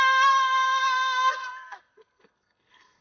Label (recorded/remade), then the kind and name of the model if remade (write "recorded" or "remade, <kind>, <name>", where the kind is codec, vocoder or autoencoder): remade, codec, SNAC